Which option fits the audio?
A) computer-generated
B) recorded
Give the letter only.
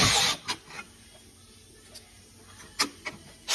B